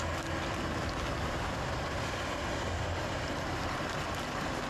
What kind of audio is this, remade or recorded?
recorded